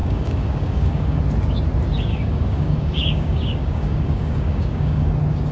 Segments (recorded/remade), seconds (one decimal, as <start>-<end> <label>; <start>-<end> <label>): 0.0-1.2 remade; 1.2-2.1 recorded; 2.1-5.1 remade; 5.1-5.5 recorded

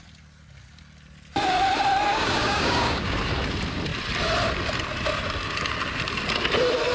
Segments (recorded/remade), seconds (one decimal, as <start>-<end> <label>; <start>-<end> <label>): 0.0-2.1 recorded; 2.1-3.2 remade; 3.2-6.9 recorded

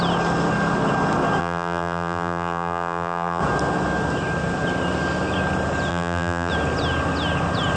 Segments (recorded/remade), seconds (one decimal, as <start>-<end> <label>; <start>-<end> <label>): 0.0-1.4 recorded; 1.4-3.4 remade; 3.4-5.9 recorded; 5.9-6.5 remade; 6.5-7.8 recorded

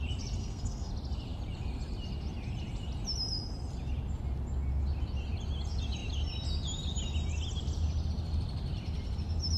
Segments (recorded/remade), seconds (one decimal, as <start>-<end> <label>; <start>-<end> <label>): 0.0-0.4 recorded; 0.4-0.9 remade; 0.9-9.6 recorded